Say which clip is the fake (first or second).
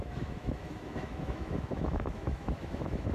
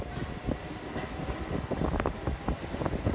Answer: first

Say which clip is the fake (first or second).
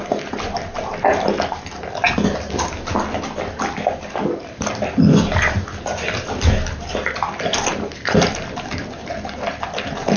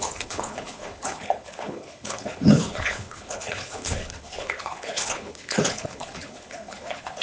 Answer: second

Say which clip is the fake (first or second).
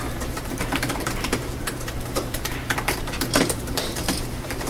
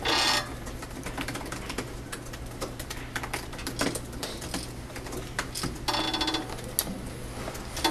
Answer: first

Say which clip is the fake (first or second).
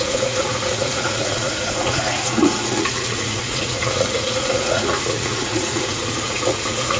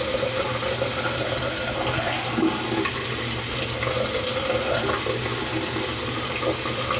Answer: first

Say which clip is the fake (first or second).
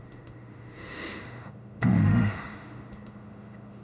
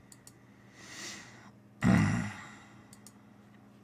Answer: first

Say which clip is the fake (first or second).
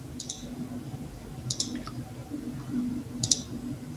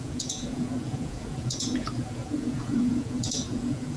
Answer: second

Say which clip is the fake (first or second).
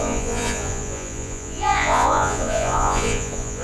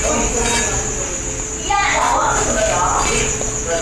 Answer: first